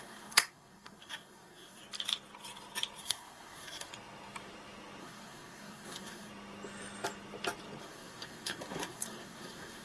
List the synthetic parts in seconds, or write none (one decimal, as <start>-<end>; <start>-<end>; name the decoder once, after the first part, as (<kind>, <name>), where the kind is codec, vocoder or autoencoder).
0.0-1.8 (codec, SNAC); 3.0-3.9; 5.0-6.3; 7.8-9.8